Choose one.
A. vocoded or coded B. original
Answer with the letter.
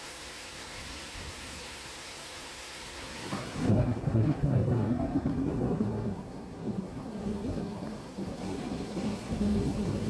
A